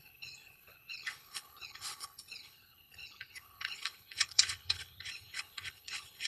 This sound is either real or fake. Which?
fake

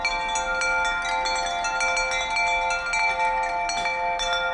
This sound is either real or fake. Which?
real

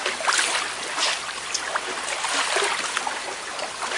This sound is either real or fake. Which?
real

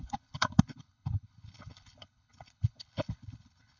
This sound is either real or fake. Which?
fake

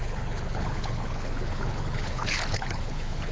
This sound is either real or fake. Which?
fake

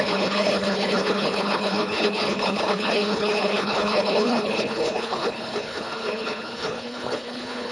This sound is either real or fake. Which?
fake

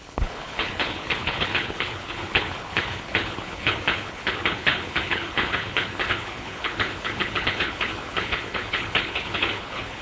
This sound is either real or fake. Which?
fake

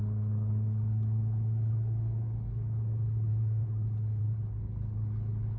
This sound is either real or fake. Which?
fake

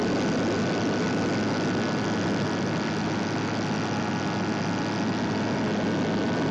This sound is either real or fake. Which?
real